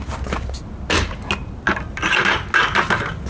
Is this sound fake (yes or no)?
no